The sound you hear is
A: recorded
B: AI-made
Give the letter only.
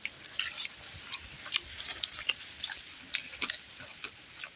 A